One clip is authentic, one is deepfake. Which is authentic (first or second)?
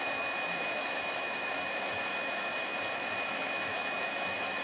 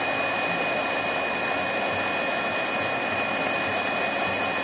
second